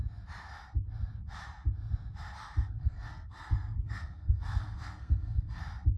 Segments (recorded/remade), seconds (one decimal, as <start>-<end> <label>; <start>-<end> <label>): 0.0-2.8 recorded; 2.8-5.6 remade; 5.6-6.0 recorded